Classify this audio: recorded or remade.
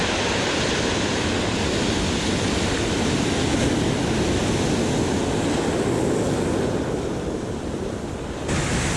recorded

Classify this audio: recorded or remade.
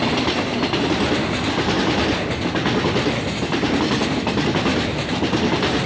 recorded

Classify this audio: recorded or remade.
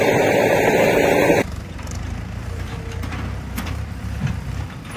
remade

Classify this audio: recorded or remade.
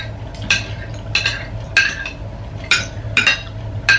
recorded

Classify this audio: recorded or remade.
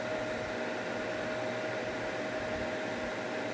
recorded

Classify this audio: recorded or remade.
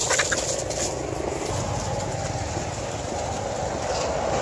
recorded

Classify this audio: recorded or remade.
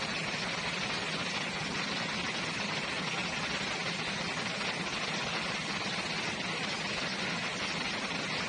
recorded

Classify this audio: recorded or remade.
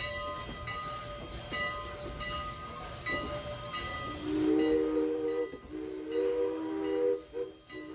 recorded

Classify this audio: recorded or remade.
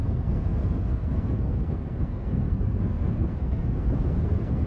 remade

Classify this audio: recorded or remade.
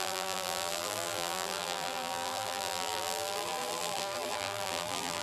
remade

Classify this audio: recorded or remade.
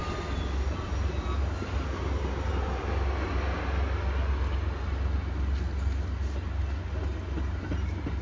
recorded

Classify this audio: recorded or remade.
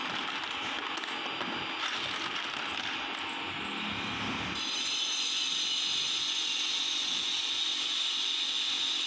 recorded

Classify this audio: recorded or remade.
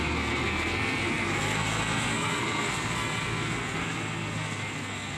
remade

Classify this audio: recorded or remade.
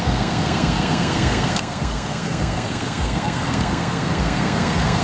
remade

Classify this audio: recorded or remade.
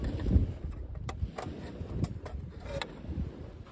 recorded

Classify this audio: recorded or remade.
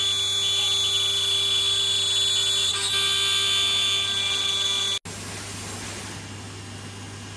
recorded